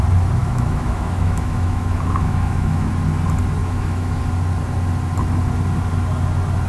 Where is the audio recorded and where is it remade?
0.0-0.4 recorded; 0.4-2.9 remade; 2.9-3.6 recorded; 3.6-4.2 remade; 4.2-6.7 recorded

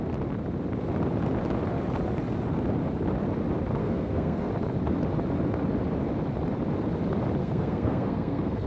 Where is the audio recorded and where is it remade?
0.0-3.8 recorded; 3.8-4.5 remade; 4.5-7.4 recorded; 7.4-8.7 remade